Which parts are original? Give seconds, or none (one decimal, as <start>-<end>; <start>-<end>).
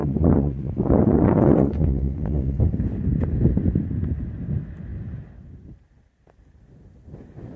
2.6-7.6